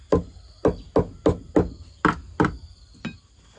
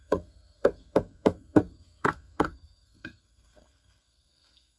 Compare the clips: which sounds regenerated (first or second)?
second